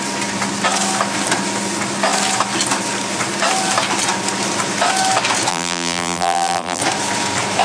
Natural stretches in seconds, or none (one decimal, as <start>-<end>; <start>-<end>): 0.0-5.5; 6.8-7.6